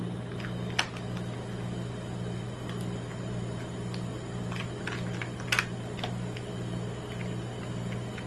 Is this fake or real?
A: real